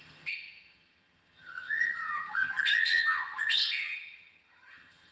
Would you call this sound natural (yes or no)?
no